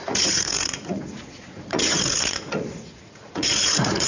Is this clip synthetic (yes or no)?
yes